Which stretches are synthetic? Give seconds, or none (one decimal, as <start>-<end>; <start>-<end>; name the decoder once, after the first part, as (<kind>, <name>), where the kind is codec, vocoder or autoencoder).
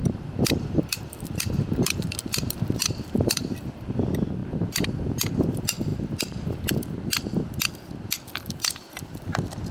0.0-4.0 (vocoder, BigVGAN v2)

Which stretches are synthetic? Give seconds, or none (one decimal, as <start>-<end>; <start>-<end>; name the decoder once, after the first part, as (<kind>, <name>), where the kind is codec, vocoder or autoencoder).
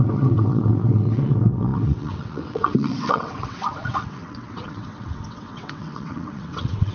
0.0-6.9 (vocoder, WaveNeXt)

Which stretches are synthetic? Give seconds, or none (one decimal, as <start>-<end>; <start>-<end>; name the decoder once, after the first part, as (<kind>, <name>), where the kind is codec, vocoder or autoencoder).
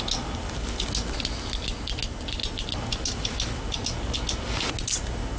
none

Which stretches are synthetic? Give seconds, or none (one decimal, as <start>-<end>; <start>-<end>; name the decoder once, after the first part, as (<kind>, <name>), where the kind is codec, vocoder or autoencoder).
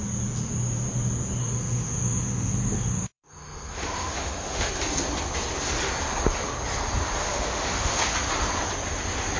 1.4-4.7 (autoencoder, DAC-VAE); 7.2-8.0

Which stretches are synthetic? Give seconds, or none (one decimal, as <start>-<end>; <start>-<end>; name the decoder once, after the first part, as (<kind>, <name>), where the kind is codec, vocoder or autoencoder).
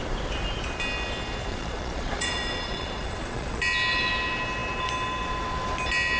1.5-3.6 (vocoder, Vocos)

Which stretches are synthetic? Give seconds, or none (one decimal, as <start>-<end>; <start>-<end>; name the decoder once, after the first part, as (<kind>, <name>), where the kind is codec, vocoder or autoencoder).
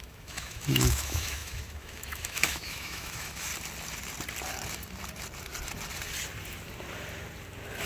0.0-3.5 (autoencoder, DAC-VAE)